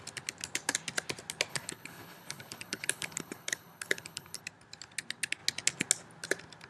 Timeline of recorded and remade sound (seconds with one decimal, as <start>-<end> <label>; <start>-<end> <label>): 0.0-1.5 recorded; 1.5-4.4 remade; 4.4-6.7 recorded